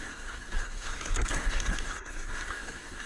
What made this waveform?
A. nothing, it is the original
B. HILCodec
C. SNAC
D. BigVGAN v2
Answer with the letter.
C